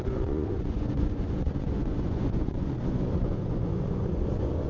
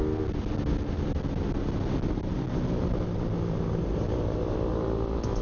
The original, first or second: second